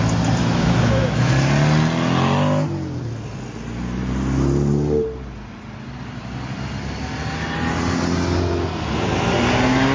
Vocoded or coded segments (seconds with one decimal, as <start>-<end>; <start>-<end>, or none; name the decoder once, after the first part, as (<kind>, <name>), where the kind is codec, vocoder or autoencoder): 0.4-1.3 (autoencoder, DAC-VAE)